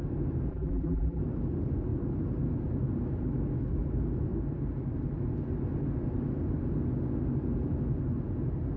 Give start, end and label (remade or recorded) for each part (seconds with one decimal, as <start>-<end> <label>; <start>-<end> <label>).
0.0-0.5 recorded; 0.5-1.2 remade; 1.2-8.8 recorded

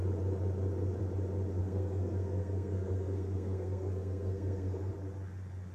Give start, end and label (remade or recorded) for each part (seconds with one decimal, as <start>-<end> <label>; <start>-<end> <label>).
0.0-1.6 recorded; 1.6-4.9 remade; 4.9-5.7 recorded

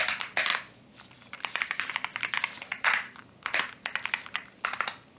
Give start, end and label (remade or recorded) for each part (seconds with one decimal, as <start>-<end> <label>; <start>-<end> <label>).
0.0-0.5 recorded; 0.5-3.6 remade; 3.6-5.2 recorded

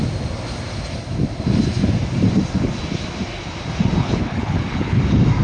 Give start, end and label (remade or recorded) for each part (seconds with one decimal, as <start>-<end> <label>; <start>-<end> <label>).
0.0-4.0 recorded; 4.0-5.0 remade; 5.0-5.4 recorded